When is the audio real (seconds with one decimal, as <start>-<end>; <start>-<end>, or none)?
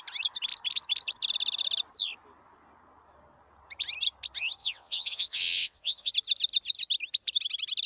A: 0.0-4.6; 6.1-7.9